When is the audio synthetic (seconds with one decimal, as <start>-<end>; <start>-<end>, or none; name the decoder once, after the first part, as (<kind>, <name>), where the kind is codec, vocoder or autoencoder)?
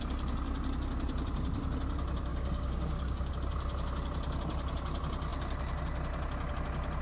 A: 2.3-3.3 (codec, DAC)